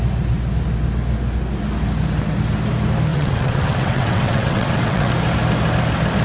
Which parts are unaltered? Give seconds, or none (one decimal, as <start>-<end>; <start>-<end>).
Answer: 0.0-3.1; 5.1-6.2